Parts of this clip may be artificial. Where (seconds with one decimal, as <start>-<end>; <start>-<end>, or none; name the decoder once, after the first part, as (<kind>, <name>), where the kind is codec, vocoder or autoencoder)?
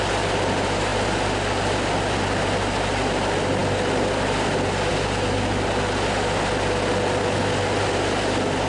none